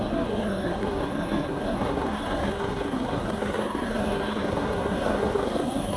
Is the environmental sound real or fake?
fake